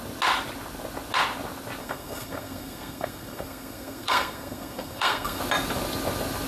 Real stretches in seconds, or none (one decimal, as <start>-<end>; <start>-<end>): 0.0-1.8; 5.4-6.5